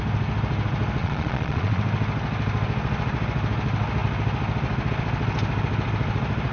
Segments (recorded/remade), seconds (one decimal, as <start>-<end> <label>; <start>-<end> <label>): 0.0-1.0 recorded; 1.0-1.8 remade; 1.8-6.5 recorded